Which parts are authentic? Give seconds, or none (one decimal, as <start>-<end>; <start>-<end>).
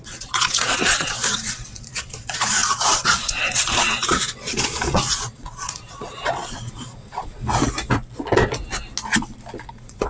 7.4-9.7